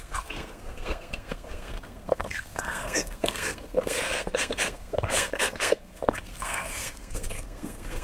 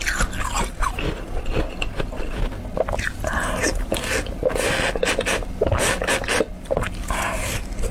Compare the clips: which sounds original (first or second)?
second